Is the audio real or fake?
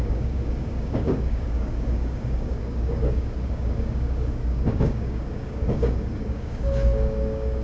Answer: fake